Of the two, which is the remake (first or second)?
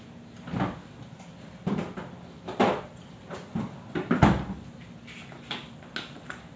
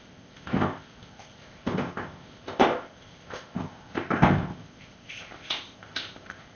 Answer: second